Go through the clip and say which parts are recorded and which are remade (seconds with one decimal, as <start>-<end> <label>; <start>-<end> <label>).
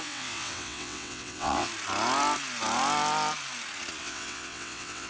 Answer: 0.0-1.7 remade; 1.7-4.0 recorded; 4.0-5.1 remade